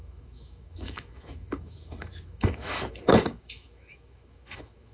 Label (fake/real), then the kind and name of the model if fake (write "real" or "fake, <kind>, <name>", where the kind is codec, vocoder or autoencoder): fake, autoencoder, DAC-VAE